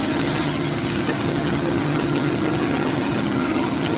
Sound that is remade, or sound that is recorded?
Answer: remade